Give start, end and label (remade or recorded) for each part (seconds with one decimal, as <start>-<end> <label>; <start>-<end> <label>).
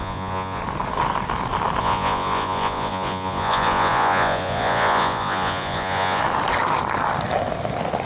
0.0-0.6 remade; 0.6-1.8 recorded; 1.8-6.2 remade; 6.2-8.1 recorded